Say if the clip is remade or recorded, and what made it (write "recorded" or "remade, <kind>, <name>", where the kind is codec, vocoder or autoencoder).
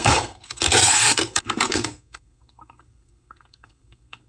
remade, codec, SNAC